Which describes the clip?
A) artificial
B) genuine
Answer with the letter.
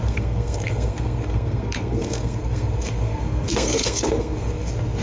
A